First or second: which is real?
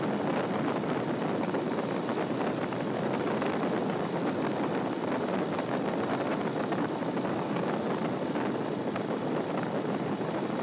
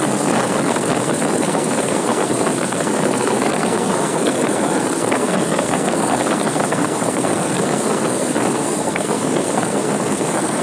first